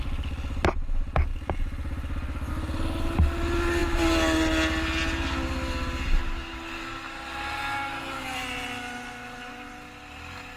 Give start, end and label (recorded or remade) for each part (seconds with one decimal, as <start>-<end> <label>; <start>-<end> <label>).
0.0-10.6 recorded